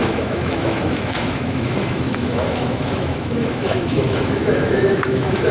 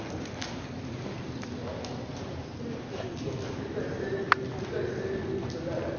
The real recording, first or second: second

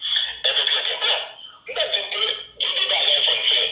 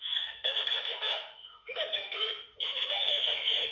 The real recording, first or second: first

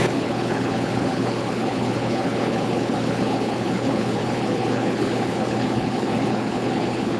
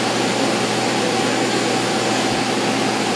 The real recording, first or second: second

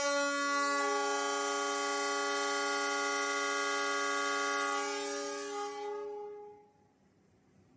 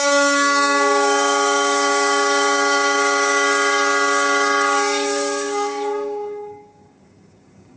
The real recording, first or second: first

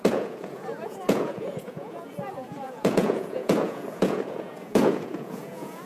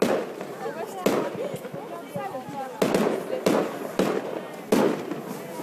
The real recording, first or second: second